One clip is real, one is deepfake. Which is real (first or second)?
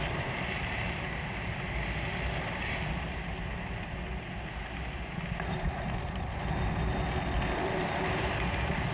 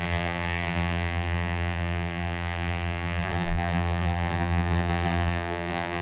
first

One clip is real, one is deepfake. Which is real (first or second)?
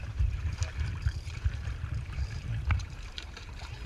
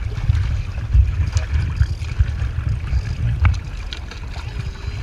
second